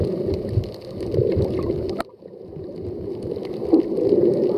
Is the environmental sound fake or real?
real